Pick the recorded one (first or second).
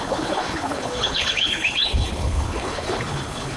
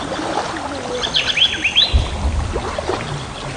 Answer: second